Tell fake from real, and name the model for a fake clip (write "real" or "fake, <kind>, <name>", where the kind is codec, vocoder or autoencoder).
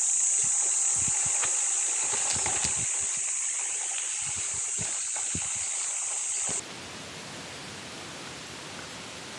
real